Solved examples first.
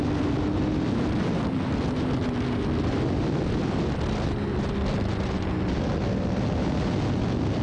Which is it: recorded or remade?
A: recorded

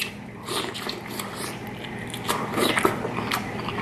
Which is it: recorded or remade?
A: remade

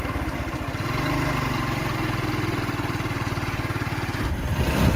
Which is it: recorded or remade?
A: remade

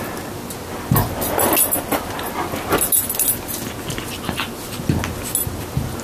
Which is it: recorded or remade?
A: recorded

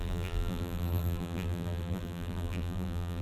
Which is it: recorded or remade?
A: remade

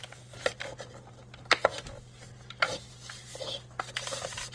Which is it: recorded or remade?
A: recorded